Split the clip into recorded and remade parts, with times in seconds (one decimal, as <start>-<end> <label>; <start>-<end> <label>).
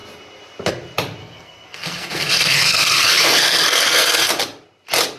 0.0-1.2 recorded; 1.2-4.3 remade; 4.3-5.2 recorded